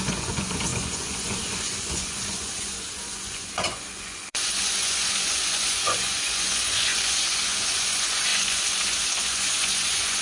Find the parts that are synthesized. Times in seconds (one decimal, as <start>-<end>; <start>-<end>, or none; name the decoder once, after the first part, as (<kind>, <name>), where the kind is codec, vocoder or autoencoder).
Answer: 0.0-10.2 (vocoder, Vocos)